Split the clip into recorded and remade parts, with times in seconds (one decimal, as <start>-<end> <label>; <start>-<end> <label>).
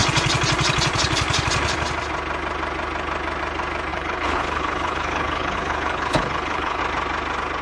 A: 0.0-3.9 recorded; 3.9-6.8 remade; 6.8-7.6 recorded